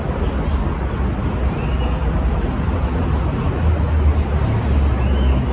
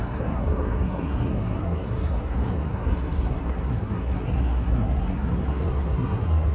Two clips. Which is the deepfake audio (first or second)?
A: second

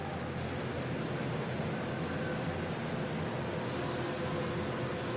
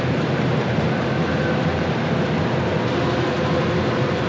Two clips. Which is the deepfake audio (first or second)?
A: second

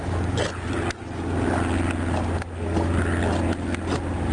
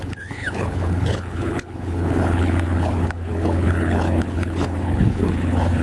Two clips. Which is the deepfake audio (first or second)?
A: second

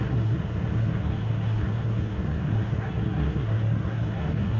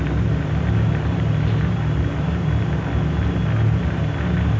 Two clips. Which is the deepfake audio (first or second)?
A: first